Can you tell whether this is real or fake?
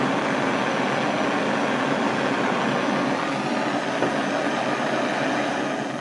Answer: real